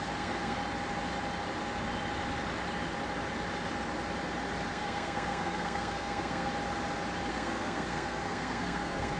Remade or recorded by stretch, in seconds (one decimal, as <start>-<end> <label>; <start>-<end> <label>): 0.0-0.6 remade; 0.6-4.7 recorded; 4.7-6.5 remade; 6.5-7.3 recorded; 7.3-9.2 remade

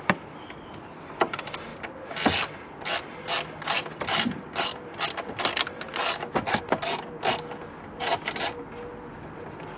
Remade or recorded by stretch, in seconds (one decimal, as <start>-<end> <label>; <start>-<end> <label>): 0.0-9.8 recorded

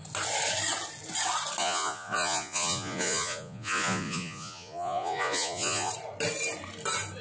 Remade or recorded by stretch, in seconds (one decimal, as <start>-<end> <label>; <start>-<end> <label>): 0.0-1.6 recorded; 1.6-5.9 remade; 5.9-7.2 recorded

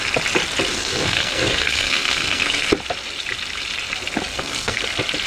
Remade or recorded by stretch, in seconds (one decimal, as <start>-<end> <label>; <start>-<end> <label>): 0.0-0.7 recorded; 0.7-2.7 remade; 2.7-4.3 recorded; 4.3-4.8 remade; 4.8-5.3 recorded

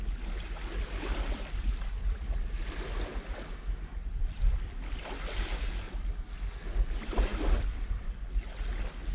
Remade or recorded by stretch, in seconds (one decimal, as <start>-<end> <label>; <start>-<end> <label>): 0.0-9.1 recorded